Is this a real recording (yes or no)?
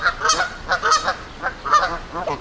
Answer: yes